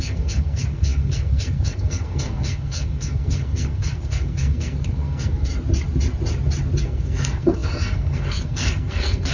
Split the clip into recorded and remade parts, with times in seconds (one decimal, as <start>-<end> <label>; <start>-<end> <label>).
0.0-5.5 remade; 5.5-6.8 recorded; 6.8-9.3 remade